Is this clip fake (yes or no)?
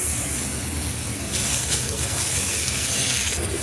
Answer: yes